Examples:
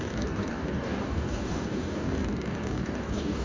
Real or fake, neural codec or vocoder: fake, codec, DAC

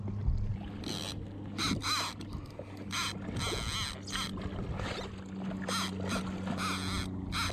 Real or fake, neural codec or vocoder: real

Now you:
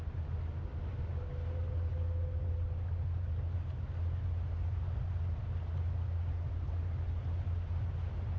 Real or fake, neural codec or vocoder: real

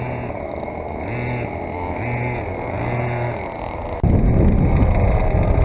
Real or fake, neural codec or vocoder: real